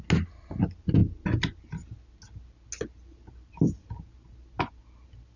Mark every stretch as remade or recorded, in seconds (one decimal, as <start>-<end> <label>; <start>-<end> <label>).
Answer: 0.0-5.4 recorded